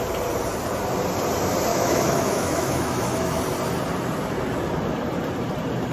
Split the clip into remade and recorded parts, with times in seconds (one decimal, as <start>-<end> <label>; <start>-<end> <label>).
0.0-1.7 recorded; 1.7-3.4 remade; 3.4-5.9 recorded